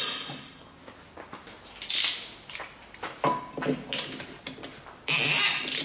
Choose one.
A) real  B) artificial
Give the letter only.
A